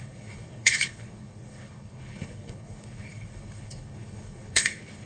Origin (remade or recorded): remade